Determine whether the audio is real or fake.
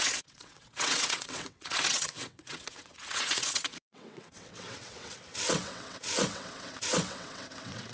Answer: fake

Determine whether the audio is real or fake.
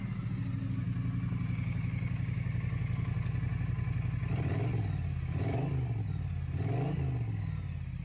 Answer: real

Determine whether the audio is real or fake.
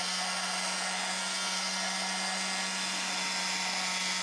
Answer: real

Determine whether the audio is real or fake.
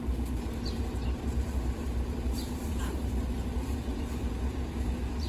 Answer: fake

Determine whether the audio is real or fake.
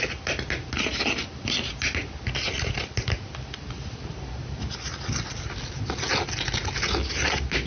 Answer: real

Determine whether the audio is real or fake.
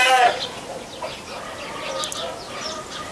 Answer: real